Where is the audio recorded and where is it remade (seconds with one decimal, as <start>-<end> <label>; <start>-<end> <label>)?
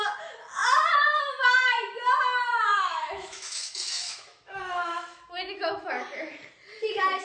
0.0-2.7 recorded; 2.7-5.9 remade; 5.9-7.2 recorded